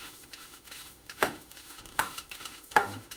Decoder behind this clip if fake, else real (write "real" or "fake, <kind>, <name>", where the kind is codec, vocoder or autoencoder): fake, autoencoder, DAC-VAE